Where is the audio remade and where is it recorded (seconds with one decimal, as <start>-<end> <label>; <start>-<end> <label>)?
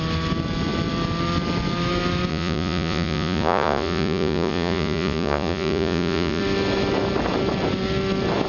0.0-2.3 recorded; 2.3-6.4 remade; 6.4-8.5 recorded